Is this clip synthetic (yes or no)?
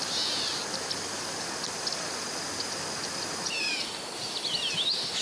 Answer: no